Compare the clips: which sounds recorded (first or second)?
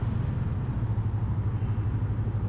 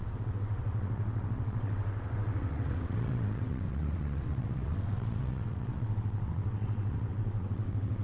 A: first